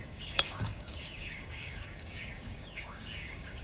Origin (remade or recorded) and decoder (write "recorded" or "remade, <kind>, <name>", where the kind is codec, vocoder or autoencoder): remade, codec, DAC